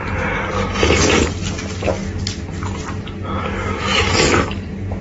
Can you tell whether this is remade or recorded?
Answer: recorded